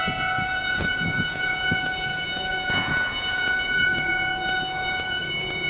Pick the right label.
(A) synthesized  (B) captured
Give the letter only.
A